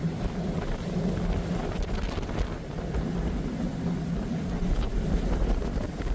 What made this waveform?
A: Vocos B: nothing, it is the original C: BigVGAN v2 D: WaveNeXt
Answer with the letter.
B